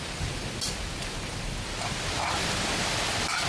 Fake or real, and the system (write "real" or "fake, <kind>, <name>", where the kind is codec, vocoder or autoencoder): real